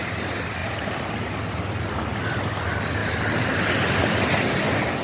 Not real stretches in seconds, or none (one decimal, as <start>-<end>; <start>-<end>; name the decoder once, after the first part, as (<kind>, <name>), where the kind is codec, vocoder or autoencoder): 0.6-1.3 (vocoder, BigVGAN v2); 3.0-3.6